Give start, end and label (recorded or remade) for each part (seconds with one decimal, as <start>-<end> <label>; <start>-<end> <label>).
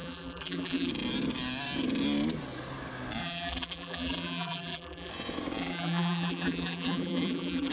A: 0.0-0.9 remade; 0.9-3.2 recorded; 3.2-5.1 remade; 5.1-5.6 recorded; 5.6-7.7 remade